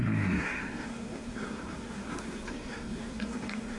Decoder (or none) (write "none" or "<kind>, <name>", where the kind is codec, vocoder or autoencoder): codec, SNAC